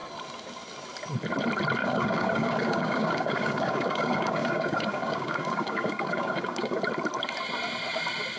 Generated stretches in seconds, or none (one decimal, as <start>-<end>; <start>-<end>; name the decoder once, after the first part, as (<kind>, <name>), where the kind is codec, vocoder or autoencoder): 1.8-6.8 (codec, DAC)